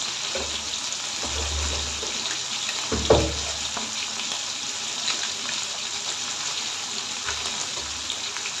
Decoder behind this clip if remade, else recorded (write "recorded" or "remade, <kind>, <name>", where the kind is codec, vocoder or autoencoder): recorded